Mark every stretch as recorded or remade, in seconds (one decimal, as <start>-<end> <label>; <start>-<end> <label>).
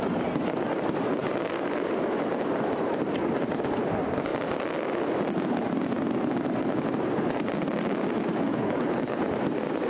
0.0-8.5 recorded; 8.5-9.2 remade; 9.2-9.9 recorded